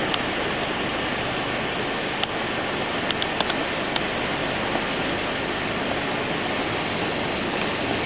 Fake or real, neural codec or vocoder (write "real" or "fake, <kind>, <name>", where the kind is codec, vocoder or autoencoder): real